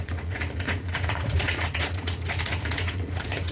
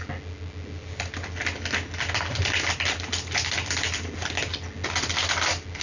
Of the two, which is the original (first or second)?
second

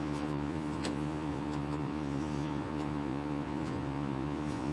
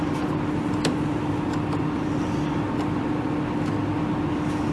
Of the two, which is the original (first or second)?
second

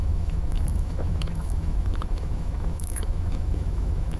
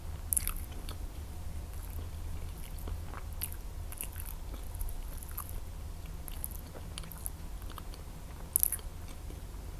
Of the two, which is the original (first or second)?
second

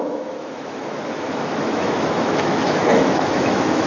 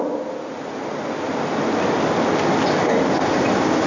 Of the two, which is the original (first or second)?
second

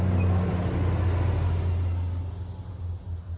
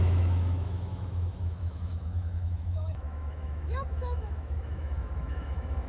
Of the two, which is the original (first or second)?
first